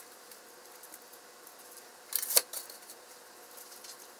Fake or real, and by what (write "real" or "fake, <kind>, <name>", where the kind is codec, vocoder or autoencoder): real